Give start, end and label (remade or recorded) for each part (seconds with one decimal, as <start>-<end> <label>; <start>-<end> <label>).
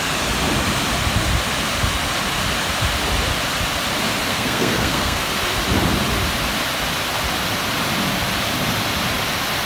0.0-4.3 recorded; 4.3-5.3 remade; 5.3-9.7 recorded